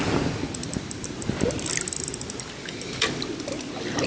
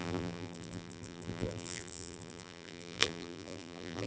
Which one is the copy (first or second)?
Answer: second